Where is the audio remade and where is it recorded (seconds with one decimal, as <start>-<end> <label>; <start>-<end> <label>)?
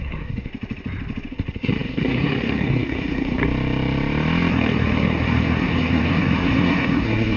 0.0-0.5 remade; 0.5-1.3 recorded; 1.3-3.4 remade; 3.4-4.5 recorded; 4.5-7.4 remade